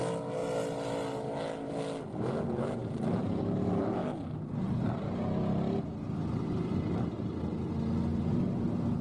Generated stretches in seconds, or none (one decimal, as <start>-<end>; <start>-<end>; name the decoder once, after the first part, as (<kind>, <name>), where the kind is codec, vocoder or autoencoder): none